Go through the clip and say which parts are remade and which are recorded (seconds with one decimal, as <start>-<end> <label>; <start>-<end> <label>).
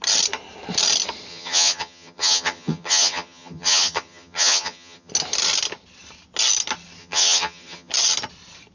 0.0-1.3 recorded; 1.3-5.1 remade; 5.1-7.0 recorded; 7.0-7.9 remade; 7.9-8.7 recorded